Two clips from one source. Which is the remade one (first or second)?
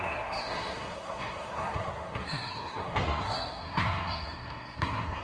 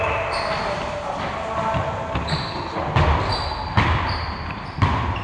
first